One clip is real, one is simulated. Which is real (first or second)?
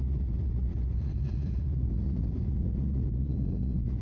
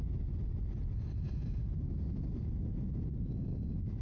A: second